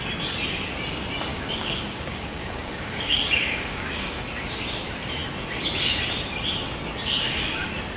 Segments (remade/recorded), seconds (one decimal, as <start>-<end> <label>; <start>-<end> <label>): 0.0-1.3 recorded; 1.3-4.1 remade; 4.1-8.0 recorded